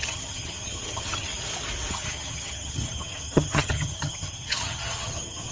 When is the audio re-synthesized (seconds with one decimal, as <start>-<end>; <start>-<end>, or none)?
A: 0.0-1.3; 1.9-5.5